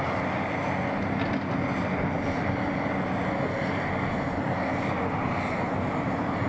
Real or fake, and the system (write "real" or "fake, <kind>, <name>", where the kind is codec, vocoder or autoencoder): real